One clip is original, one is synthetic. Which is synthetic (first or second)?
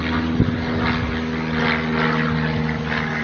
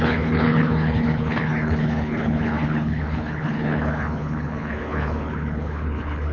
second